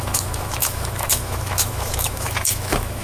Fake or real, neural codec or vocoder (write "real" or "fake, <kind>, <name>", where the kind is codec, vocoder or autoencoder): fake, autoencoder, DAC-VAE